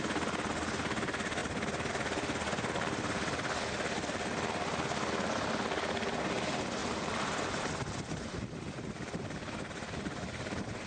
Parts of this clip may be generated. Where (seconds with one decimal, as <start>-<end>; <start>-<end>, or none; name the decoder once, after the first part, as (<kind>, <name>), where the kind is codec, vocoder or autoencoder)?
6.8-7.7 (vocoder, BigVGAN v2)